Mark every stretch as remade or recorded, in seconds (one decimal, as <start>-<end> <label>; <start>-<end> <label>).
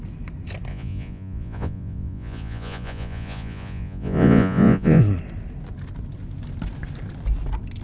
0.0-0.7 recorded; 0.7-5.0 remade; 5.0-7.8 recorded